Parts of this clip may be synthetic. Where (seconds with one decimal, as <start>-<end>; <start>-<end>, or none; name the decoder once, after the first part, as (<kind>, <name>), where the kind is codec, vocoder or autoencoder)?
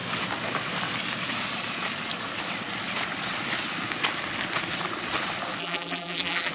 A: 5.6-6.5 (vocoder, BigVGAN v2)